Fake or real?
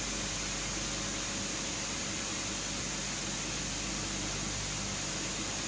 real